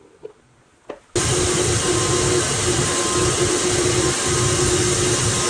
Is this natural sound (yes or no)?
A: yes